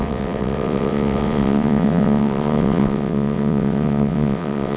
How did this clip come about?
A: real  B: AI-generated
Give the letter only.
B